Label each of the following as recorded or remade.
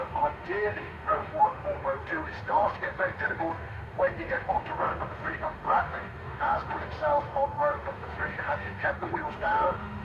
remade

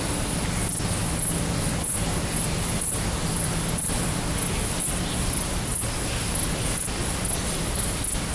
recorded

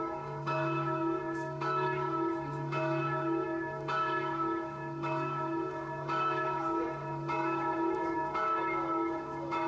remade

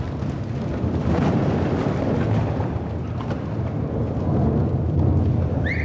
recorded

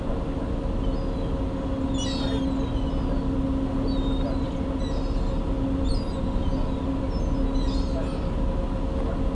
recorded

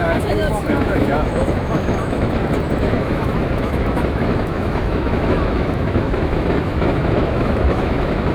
remade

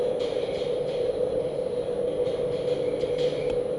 recorded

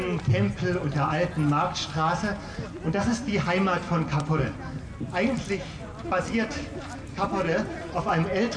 recorded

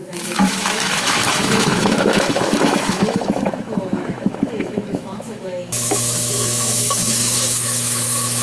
remade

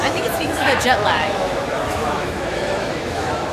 remade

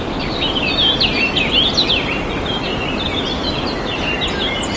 recorded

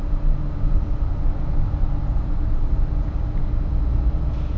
recorded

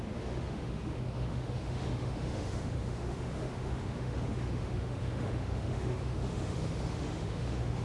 remade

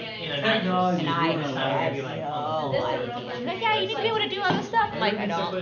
recorded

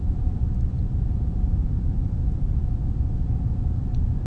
recorded